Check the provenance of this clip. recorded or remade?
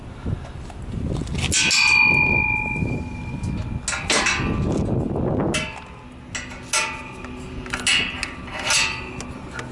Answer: recorded